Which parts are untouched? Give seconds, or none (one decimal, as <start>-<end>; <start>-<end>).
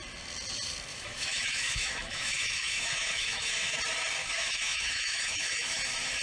0.0-0.9; 3.8-4.2; 5.8-6.2